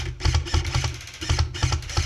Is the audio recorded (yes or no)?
yes